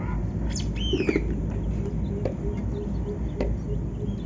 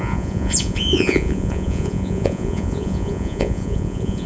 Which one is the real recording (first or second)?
first